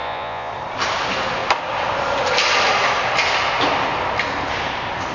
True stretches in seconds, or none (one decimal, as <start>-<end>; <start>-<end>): 0.5-5.1